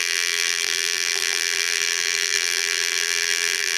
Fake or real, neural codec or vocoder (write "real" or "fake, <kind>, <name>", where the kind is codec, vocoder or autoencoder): fake, vocoder, BigVGAN v2